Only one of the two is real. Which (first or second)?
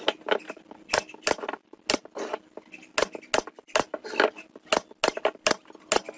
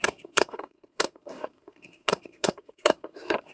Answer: first